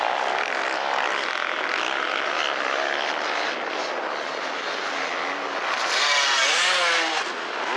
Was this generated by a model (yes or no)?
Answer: no